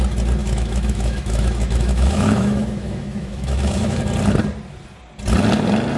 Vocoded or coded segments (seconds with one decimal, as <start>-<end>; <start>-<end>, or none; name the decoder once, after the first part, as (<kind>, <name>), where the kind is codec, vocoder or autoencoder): 0.4-4.0 (autoencoder, DAC-VAE)